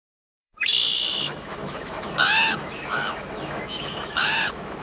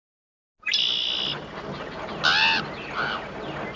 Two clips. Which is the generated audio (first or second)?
first